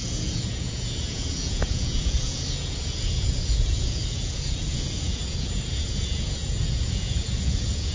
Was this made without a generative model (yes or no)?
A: no